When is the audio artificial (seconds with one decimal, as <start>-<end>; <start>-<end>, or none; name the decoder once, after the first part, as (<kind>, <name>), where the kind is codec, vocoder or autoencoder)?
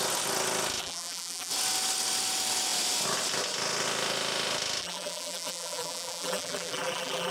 0.8-1.5 (vocoder, BigVGAN v2); 4.8-7.3